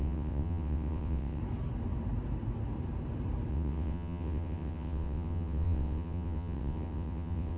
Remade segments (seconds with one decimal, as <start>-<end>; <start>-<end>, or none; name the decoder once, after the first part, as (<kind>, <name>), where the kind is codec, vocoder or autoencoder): 0.0-1.4 (vocoder, WaveNeXt); 3.5-7.6